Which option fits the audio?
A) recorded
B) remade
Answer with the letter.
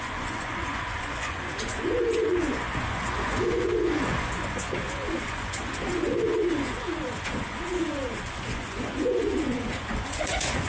B